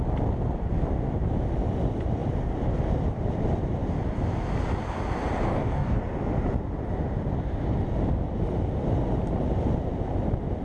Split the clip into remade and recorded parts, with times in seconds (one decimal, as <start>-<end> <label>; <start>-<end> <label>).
0.0-5.5 recorded; 5.5-6.0 remade; 6.0-10.6 recorded